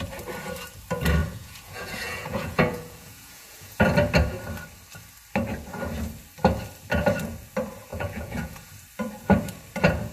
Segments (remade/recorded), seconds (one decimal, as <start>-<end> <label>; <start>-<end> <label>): 0.0-1.2 recorded; 1.2-3.8 remade; 3.8-7.9 recorded; 7.9-8.7 remade; 8.7-10.1 recorded

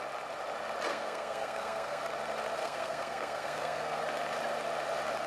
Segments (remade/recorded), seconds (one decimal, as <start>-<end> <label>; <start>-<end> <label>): 0.0-0.9 recorded; 0.9-2.0 remade; 2.0-2.6 recorded; 2.6-4.0 remade; 4.0-5.3 recorded